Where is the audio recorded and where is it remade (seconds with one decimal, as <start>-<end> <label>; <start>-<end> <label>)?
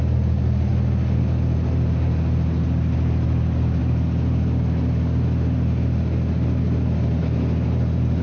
0.0-8.2 recorded